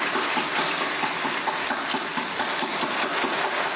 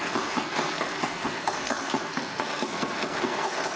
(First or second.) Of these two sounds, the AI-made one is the second